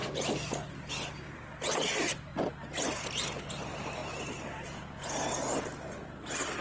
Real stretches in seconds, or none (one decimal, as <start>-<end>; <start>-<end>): 0.0-6.6